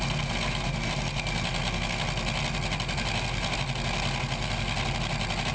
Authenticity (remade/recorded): recorded